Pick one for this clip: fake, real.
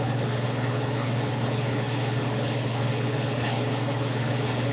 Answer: fake